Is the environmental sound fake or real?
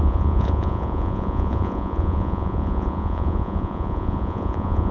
fake